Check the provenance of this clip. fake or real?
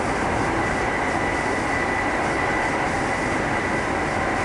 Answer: real